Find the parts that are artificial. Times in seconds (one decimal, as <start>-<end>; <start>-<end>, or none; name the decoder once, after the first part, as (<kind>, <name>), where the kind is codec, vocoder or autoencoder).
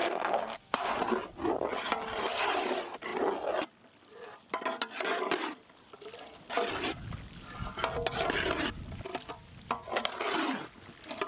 0.0-0.9 (codec, SNAC)